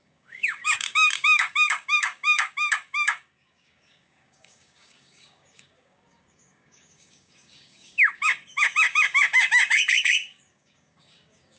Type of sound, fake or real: fake